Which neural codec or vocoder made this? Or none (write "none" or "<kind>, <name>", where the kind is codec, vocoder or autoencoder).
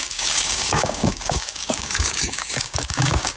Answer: codec, DAC